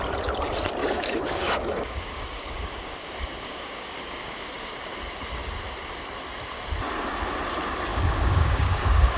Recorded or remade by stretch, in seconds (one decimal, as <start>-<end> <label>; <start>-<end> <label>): 0.0-0.8 recorded; 0.8-4.7 remade; 4.7-7.9 recorded; 7.9-9.2 remade